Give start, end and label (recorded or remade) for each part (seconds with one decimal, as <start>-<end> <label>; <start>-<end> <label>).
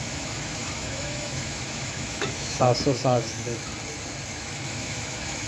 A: 0.0-3.7 remade; 3.7-4.3 recorded; 4.3-5.5 remade